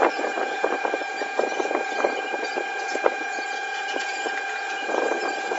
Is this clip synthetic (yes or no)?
yes